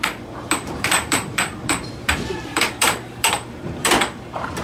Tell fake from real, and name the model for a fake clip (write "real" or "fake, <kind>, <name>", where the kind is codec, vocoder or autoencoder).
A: fake, vocoder, BigVGAN v2